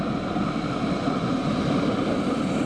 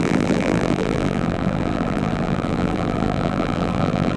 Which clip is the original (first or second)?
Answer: first